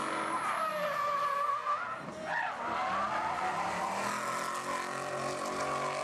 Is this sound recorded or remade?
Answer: recorded